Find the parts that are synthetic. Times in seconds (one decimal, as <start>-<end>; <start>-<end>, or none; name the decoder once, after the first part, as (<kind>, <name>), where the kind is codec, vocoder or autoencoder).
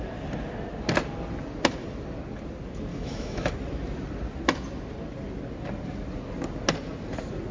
2.9-3.5 (autoencoder, DAC-VAE)